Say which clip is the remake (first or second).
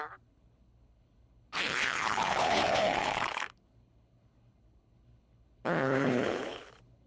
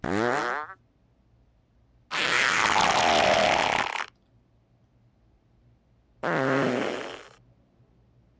first